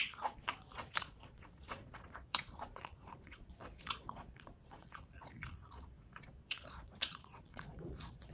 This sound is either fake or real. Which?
fake